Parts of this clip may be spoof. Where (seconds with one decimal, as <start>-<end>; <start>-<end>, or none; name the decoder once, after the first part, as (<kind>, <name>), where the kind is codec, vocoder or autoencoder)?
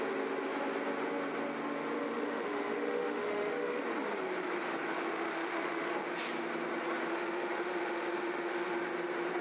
2.0-3.8 (autoencoder, DAC-VAE); 5.1-5.9; 7.1-8.9